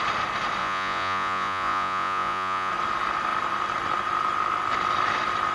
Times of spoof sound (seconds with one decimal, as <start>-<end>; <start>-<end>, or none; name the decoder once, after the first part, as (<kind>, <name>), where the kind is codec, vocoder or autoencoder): 0.6-2.7 (vocoder, Vocos)